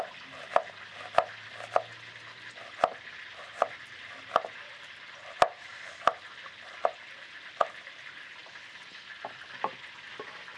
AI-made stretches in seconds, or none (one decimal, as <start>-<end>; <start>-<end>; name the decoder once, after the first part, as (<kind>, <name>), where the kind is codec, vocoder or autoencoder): none